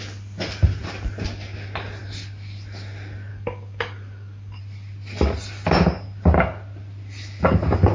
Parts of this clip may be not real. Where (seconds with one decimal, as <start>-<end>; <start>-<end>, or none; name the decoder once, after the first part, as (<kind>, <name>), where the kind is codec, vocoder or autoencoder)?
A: 3.3-4.6 (codec, DAC)